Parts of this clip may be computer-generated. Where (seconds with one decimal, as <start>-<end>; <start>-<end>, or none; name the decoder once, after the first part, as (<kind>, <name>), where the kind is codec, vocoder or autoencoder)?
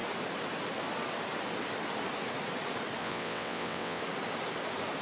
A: 3.0-4.0 (vocoder, WaveNeXt)